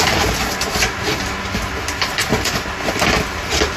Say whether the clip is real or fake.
real